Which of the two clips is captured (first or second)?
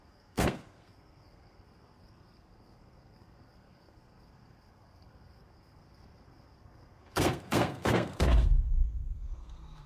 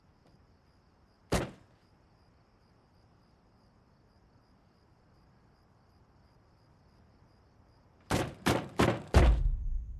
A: second